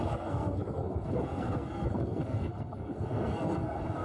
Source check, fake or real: fake